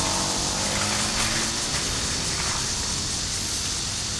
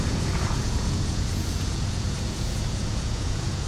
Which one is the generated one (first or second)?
second